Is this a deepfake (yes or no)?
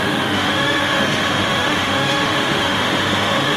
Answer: yes